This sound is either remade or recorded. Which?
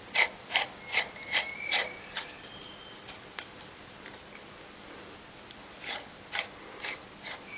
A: recorded